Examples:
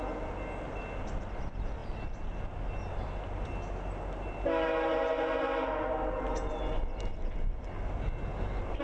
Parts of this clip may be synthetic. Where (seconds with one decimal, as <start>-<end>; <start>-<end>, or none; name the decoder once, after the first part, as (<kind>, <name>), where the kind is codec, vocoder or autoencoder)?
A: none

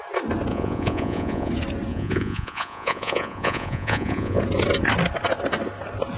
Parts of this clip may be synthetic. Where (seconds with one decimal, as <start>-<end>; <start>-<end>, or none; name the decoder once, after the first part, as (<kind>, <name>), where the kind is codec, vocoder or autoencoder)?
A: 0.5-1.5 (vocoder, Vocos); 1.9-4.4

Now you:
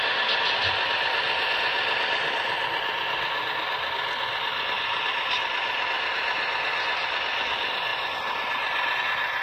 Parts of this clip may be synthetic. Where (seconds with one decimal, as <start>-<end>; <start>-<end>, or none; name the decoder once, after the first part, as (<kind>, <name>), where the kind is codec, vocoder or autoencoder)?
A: 7.9-9.0 (vocoder, BigVGAN v2)

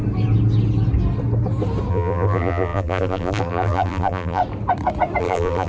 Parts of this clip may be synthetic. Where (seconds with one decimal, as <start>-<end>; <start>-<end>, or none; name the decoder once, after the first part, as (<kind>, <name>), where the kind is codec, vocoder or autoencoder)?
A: 1.9-4.4 (vocoder, BigVGAN v2); 5.2-5.7

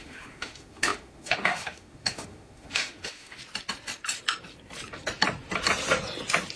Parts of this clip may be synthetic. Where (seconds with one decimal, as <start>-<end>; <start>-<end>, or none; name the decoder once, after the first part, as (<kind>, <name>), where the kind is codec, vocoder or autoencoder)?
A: 0.0-3.4 (autoencoder, DAC-VAE)